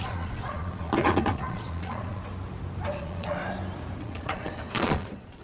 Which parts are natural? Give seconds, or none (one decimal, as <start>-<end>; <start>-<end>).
2.2-3.0; 3.4-4.0